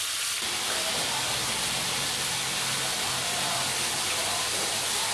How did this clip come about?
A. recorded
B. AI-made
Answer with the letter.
B